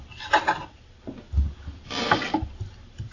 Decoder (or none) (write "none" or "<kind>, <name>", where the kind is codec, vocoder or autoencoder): none